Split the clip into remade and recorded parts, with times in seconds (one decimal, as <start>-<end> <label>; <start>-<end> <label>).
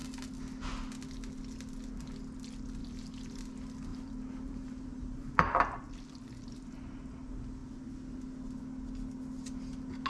0.0-2.8 recorded; 2.8-3.4 remade; 3.4-3.9 recorded; 3.9-5.3 remade; 5.3-10.1 recorded